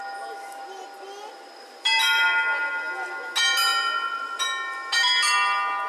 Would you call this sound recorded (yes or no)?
yes